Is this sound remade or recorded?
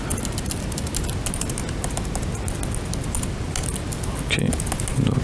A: recorded